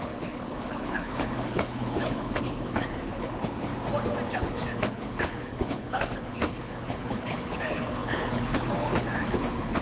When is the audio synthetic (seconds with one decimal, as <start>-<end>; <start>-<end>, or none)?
0.0-3.7; 4.3-9.8